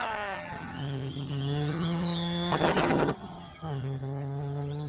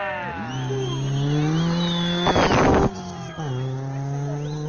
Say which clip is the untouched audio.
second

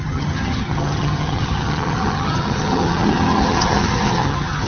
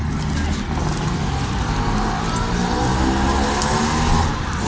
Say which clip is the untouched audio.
second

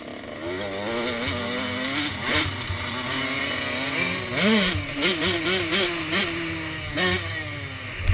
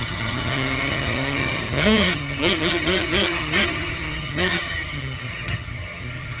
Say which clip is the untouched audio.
first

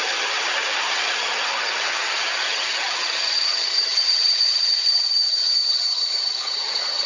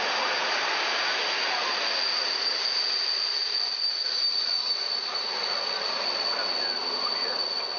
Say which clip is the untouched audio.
second